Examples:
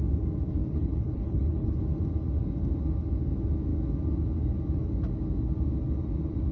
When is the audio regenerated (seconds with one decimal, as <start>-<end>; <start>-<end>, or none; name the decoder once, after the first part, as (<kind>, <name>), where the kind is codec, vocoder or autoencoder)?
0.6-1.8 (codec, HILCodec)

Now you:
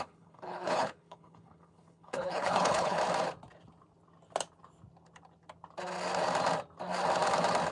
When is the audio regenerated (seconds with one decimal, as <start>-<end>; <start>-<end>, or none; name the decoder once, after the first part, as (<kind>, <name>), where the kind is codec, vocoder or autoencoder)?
0.0-3.0 (codec, HILCodec)

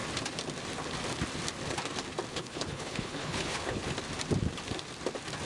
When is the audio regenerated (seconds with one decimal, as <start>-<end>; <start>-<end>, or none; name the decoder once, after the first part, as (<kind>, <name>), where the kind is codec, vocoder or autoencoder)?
2.3-3.8 (codec, HILCodec)